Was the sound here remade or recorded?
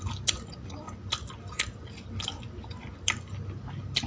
recorded